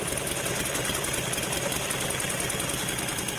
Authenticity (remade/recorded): recorded